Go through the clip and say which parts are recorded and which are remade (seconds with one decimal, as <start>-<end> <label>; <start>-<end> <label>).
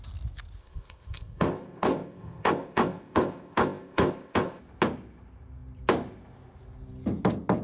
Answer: 0.0-0.6 recorded; 0.6-4.6 remade; 4.6-7.6 recorded